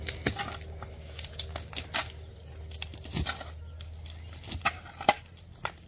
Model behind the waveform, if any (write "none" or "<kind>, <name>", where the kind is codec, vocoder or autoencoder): none